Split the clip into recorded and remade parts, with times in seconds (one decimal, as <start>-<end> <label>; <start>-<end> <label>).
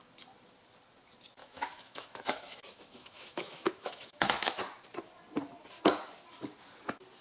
0.0-1.4 recorded; 1.4-4.6 remade; 4.6-7.2 recorded